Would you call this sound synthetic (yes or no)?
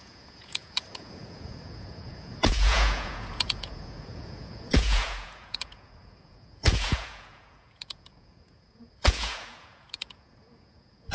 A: yes